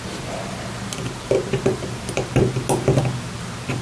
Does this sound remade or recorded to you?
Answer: recorded